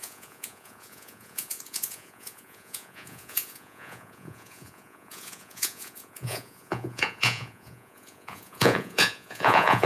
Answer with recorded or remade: remade